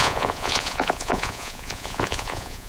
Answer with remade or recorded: remade